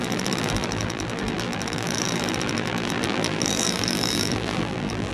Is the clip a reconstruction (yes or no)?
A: yes